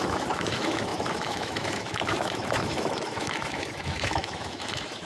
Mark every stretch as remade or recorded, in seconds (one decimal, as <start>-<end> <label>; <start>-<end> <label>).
0.0-5.1 remade